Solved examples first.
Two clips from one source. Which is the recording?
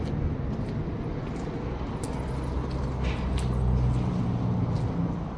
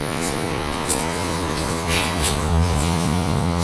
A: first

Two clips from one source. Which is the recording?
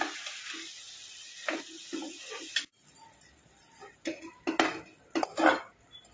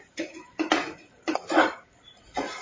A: first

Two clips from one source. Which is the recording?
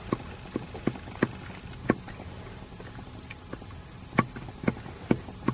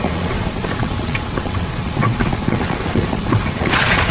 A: first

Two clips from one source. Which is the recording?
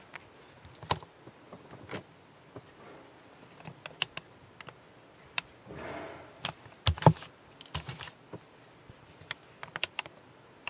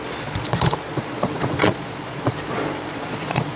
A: first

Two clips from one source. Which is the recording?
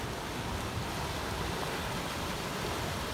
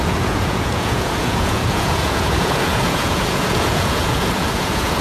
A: first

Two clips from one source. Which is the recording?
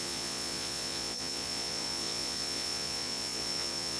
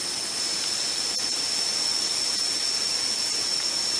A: second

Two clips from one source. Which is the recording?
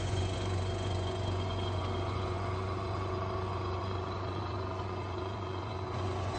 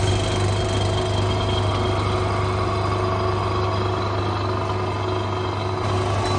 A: second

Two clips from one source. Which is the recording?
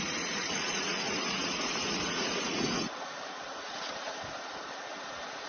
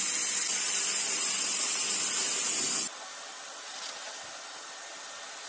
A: second